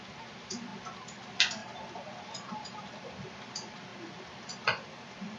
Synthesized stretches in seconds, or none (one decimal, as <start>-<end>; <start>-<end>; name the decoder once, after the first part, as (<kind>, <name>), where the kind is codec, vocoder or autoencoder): none